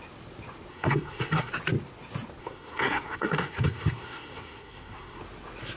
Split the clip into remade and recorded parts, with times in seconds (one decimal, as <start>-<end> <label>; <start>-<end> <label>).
0.0-0.7 recorded; 0.7-1.5 remade; 1.5-2.4 recorded; 2.4-5.2 remade; 5.2-5.8 recorded